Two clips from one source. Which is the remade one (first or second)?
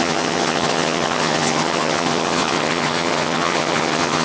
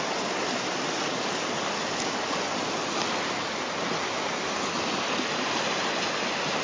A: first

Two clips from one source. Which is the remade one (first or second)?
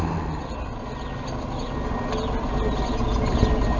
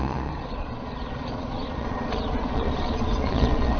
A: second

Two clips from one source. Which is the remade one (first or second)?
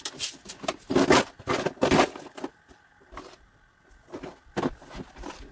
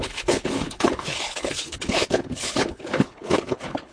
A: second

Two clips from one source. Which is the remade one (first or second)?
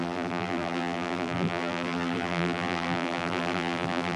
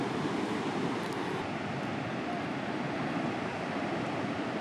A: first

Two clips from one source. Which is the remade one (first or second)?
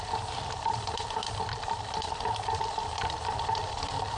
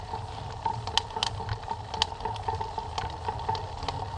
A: first